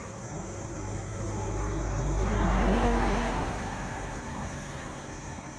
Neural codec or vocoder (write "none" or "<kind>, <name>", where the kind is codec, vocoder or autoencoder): codec, SNAC